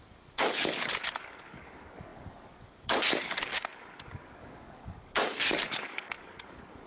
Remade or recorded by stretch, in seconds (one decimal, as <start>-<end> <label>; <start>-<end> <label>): 0.0-6.9 remade